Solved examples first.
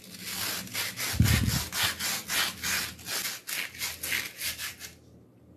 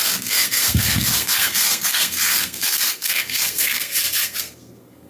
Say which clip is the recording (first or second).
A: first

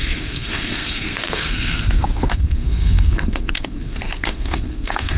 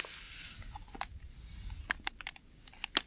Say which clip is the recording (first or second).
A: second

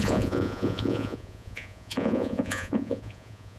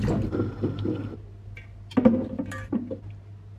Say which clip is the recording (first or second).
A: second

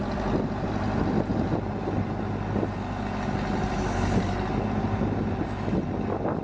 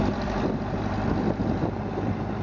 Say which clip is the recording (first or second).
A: first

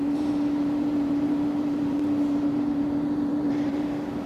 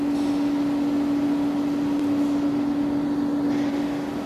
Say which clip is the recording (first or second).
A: second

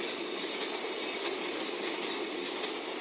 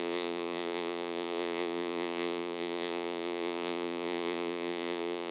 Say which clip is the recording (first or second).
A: first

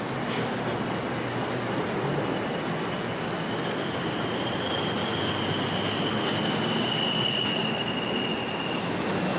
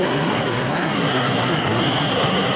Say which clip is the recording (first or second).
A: first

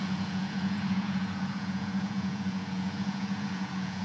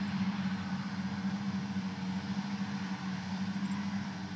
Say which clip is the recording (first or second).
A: second